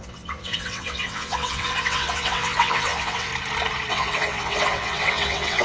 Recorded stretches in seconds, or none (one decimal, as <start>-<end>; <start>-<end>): 3.3-3.9